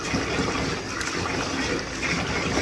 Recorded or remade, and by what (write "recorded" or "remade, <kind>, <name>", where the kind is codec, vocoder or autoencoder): recorded